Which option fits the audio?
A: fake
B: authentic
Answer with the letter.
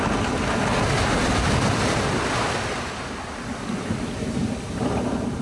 B